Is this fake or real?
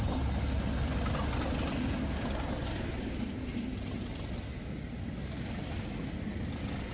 real